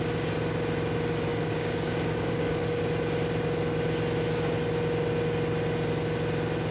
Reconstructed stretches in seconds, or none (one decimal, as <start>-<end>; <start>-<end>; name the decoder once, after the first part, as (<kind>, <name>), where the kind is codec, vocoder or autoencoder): 1.3-2.8 (codec, DAC)